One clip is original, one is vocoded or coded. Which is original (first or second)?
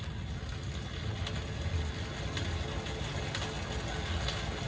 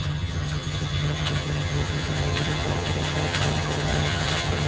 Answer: first